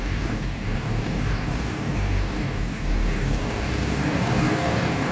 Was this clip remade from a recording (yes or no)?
yes